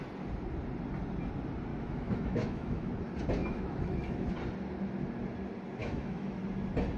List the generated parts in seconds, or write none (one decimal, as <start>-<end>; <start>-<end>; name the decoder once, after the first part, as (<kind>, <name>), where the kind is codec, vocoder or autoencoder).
1.7-2.9 (autoencoder, DAC-VAE); 3.4-4.3; 5.8-6.4